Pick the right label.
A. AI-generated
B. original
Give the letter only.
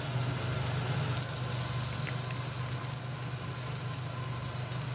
B